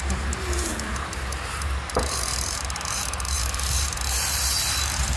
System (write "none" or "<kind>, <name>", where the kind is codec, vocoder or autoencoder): vocoder, BigVGAN v2